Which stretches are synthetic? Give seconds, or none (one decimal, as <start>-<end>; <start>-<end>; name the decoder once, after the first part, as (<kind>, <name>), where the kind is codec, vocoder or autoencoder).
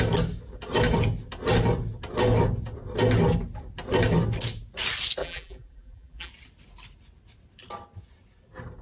5.2-6.3 (vocoder, BigVGAN v2)